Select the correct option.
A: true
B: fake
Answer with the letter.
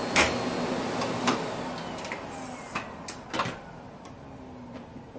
A